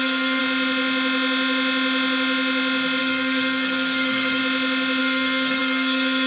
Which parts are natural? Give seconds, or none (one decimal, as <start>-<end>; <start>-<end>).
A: 0.4-3.0; 4.4-5.0